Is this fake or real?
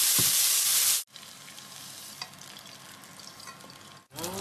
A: real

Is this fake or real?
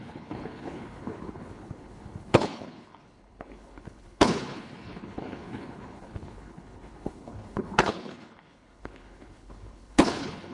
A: fake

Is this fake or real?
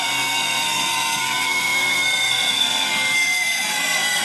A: fake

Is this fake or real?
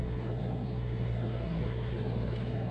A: fake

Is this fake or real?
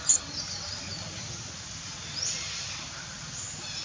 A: real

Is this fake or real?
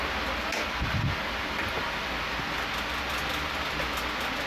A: real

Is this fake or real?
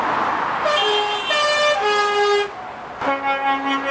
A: real